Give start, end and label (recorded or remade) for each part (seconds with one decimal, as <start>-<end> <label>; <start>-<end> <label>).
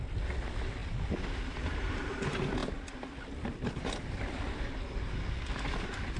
0.0-6.2 recorded